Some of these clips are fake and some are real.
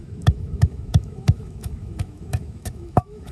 fake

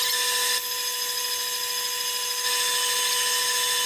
real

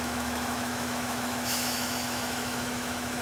fake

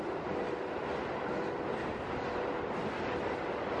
real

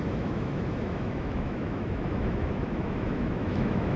fake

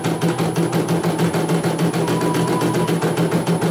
real